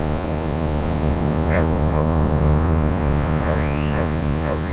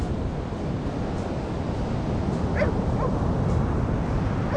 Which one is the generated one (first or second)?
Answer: first